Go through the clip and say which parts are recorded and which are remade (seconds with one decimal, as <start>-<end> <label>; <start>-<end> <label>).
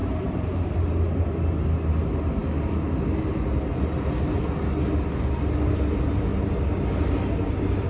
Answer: 0.0-7.9 recorded